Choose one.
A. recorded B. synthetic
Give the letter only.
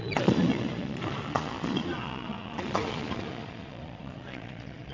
B